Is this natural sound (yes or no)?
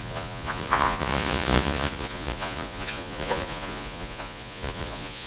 no